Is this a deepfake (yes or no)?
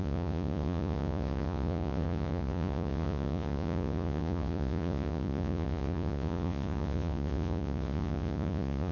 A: yes